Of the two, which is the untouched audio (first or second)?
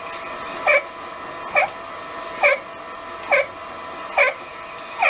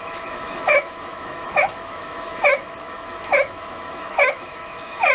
first